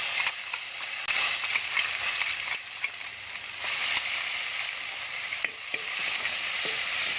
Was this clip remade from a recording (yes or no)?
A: no